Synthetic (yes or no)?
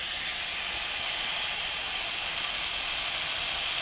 no